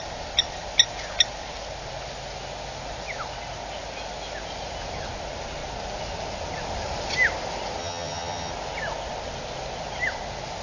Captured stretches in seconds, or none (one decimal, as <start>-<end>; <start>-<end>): 0.0-7.8; 8.5-10.6